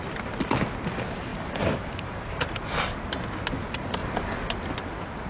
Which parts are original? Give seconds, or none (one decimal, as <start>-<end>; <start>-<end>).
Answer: 0.0-1.3; 2.5-5.3